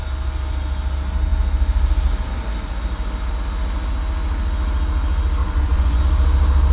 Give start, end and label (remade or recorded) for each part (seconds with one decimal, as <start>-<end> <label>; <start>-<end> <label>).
0.0-5.4 recorded; 5.4-6.0 remade; 6.0-6.7 recorded